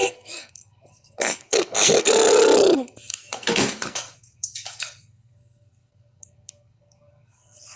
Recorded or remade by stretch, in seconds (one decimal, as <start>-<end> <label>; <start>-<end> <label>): 0.0-7.8 remade